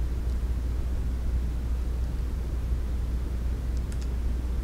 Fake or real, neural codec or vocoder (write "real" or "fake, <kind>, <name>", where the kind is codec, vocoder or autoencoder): real